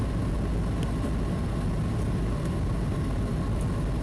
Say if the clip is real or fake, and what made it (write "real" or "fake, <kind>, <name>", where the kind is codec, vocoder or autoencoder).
real